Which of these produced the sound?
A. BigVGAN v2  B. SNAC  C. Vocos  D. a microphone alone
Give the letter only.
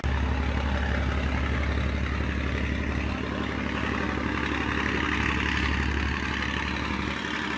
D